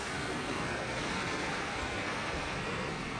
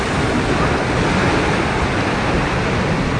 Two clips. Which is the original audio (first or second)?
second